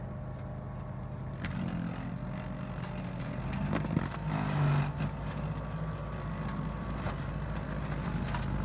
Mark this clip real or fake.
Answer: real